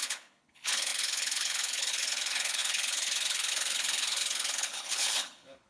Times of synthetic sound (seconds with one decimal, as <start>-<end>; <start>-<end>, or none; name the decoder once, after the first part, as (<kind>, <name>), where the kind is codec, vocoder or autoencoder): 0.0-5.7 (codec, HILCodec)